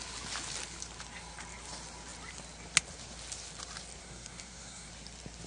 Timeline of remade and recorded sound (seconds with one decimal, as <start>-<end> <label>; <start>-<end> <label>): 0.0-4.0 recorded; 4.0-4.9 remade; 4.9-5.5 recorded